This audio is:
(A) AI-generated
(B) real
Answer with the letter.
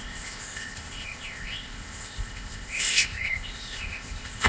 A